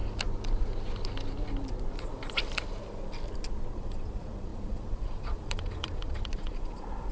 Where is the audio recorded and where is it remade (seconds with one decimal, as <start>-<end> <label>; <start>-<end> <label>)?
0.0-3.7 recorded; 3.7-7.1 remade